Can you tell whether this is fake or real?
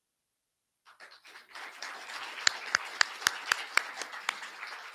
real